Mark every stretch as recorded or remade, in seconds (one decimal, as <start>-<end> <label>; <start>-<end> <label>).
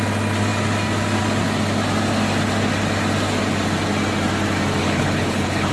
0.0-4.8 recorded; 4.8-5.7 remade